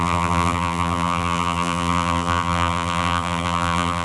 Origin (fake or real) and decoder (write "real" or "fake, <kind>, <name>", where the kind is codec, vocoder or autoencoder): fake, vocoder, BigVGAN v2